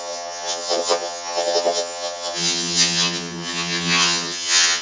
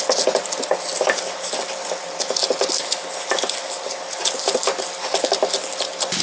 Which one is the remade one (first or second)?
first